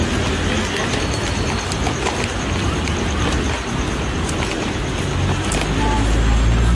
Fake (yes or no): no